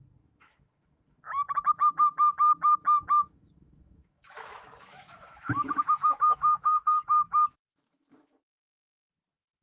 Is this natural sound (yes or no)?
no